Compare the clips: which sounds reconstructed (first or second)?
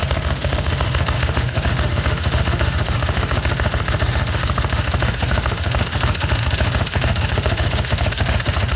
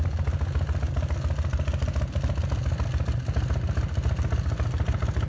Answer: first